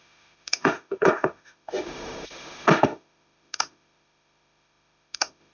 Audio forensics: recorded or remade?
remade